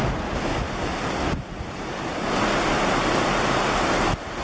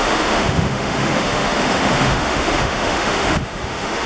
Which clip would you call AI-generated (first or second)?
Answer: second